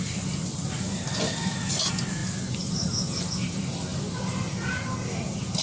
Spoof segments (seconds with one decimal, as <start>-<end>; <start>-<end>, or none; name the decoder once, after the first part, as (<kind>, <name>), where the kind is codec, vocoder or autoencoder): none